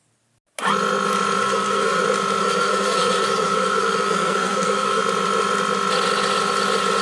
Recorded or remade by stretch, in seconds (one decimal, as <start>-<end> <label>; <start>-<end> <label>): 0.0-1.4 recorded; 1.4-2.0 remade; 2.0-2.4 recorded; 2.4-5.0 remade; 5.0-7.0 recorded